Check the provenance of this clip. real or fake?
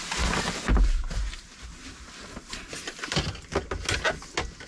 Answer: real